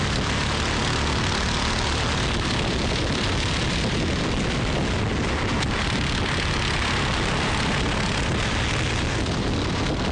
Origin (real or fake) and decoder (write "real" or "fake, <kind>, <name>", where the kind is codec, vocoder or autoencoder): real